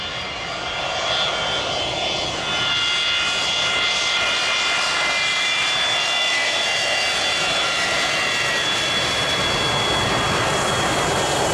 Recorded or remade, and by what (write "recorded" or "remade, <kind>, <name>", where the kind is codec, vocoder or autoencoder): recorded